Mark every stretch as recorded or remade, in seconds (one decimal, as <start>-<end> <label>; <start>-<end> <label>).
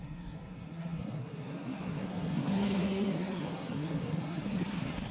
0.0-5.1 remade